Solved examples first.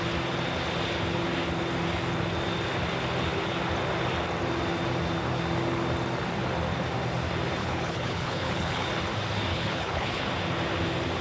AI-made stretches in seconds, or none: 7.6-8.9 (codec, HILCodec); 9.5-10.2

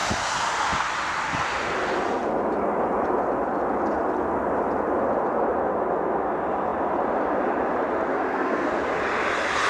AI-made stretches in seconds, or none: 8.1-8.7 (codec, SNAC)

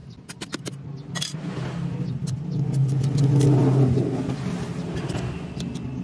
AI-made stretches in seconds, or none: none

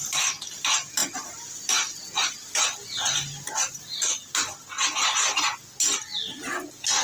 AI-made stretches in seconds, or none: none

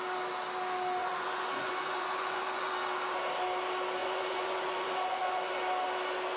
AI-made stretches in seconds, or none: 1.0-2.7 (vocoder, Vocos); 4.0-5.5

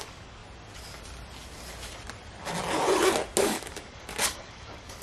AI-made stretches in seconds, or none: 0.0-0.4 (codec, DAC); 3.4-5.0

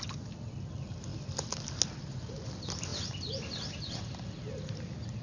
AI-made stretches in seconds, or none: none

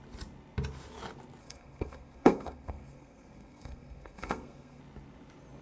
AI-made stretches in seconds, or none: 1.4-4.8 (codec, SNAC)